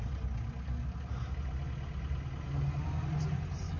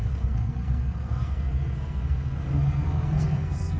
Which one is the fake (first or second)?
second